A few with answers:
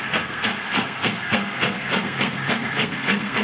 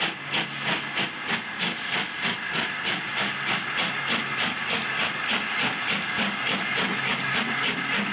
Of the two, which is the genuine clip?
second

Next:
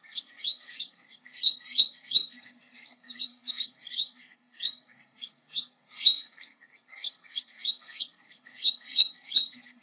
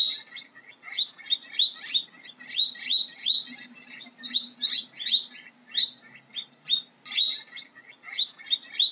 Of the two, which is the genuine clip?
second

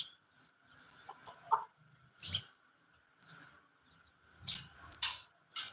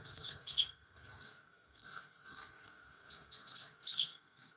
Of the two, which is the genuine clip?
first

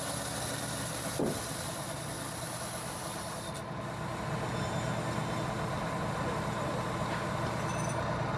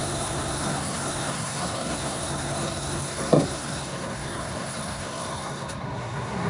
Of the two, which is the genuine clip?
first